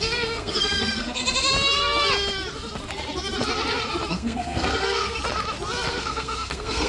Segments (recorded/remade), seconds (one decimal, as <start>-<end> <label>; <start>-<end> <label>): 0.0-1.2 remade; 1.2-4.1 recorded; 4.1-5.2 remade; 5.2-5.9 recorded; 5.9-6.9 remade